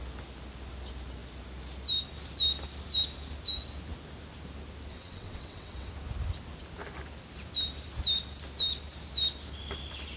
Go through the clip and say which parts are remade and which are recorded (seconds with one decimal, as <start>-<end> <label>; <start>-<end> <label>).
0.0-4.9 recorded; 4.9-5.9 remade; 5.9-10.2 recorded